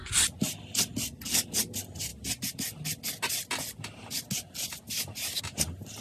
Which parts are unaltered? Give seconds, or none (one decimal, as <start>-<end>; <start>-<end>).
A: 0.0-6.0